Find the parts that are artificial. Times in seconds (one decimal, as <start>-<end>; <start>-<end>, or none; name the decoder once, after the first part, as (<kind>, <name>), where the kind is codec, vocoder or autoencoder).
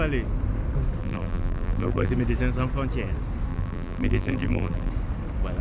1.0-2.1 (vocoder, BigVGAN v2); 3.5-4.9